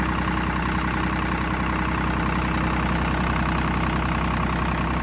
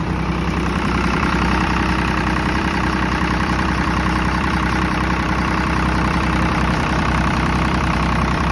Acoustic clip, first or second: first